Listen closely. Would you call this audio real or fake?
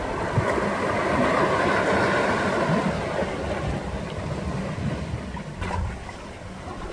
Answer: real